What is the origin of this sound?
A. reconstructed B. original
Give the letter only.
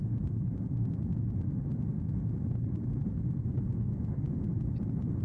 B